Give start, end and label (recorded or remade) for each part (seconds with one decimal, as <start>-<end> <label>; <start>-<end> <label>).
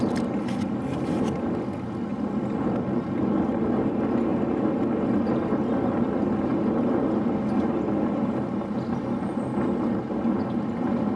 0.0-11.2 recorded